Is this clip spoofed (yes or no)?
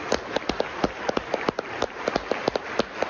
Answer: no